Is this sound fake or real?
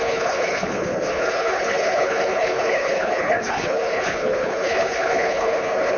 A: fake